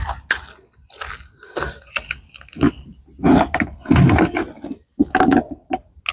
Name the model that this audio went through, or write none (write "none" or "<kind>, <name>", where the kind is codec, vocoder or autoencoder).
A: none